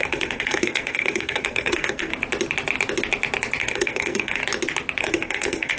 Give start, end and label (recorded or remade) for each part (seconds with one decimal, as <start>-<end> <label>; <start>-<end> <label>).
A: 0.0-2.1 remade; 2.1-3.6 recorded; 3.6-4.4 remade; 4.4-5.0 recorded; 5.0-5.8 remade